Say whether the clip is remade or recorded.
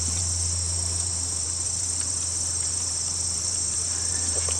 remade